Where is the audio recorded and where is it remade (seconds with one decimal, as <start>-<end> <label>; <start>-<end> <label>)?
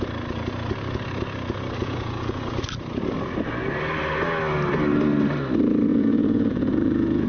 0.0-1.8 recorded; 1.8-2.4 remade; 2.4-5.9 recorded; 5.9-7.3 remade